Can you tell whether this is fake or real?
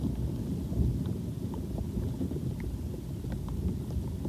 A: real